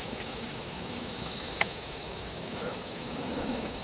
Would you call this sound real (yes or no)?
no